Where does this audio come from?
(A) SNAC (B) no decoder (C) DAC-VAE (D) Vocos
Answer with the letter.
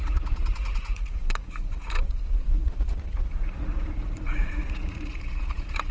D